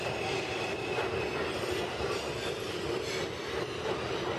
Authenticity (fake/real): real